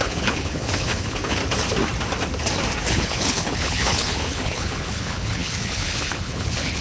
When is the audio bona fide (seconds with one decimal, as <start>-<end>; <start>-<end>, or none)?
1.4-2.9